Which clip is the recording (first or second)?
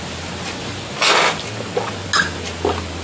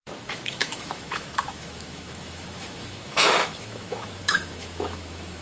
first